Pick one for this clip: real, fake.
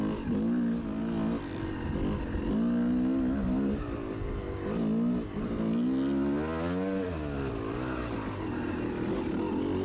real